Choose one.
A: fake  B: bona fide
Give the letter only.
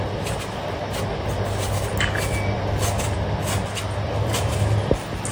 B